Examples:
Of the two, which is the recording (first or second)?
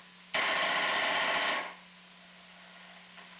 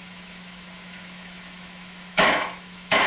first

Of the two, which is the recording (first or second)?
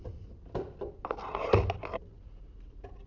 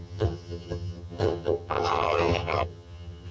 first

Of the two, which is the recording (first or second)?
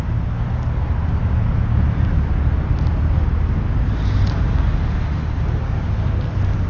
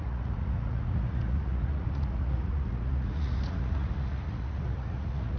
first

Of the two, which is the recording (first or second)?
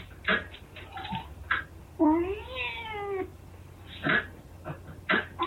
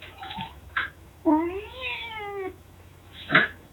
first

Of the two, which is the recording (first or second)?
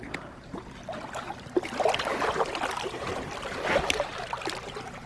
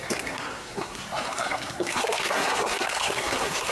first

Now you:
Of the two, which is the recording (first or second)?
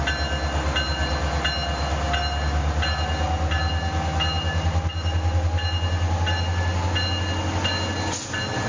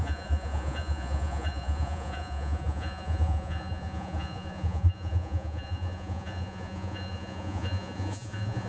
first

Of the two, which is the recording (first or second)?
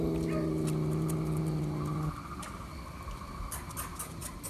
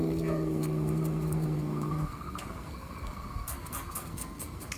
first